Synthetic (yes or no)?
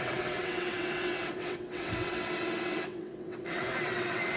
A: yes